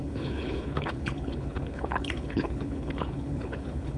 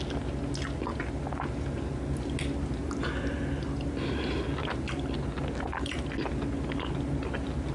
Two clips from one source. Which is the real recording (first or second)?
second